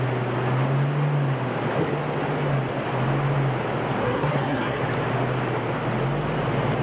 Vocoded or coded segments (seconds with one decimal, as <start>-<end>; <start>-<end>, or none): 4.0-4.8